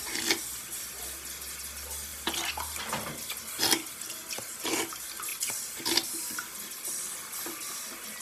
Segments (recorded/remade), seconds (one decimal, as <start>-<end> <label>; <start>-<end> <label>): 0.0-8.2 recorded